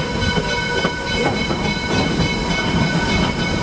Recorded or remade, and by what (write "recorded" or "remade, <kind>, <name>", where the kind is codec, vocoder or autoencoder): recorded